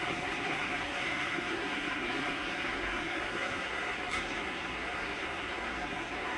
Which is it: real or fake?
fake